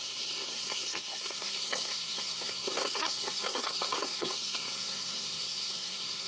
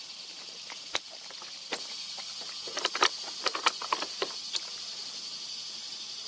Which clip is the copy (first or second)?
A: first